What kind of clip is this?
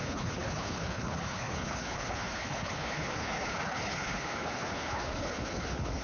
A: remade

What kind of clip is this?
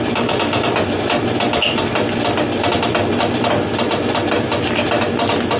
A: recorded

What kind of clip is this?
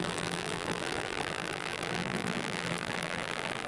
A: remade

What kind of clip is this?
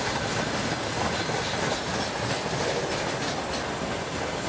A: recorded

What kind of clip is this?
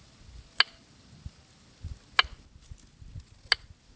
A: recorded